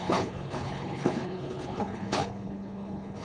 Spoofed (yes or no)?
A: yes